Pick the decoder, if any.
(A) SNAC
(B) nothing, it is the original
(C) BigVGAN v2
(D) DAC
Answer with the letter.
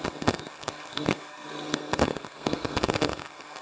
A